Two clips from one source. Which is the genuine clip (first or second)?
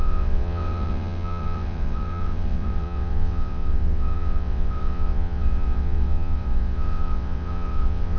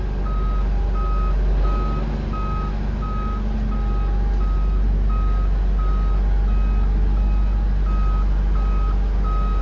second